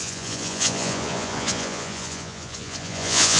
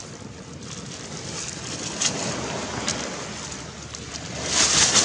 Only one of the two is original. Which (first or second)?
second